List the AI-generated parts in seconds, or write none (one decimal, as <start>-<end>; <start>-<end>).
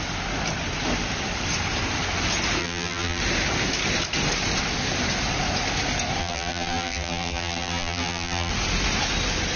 2.6-3.2; 6.2-8.5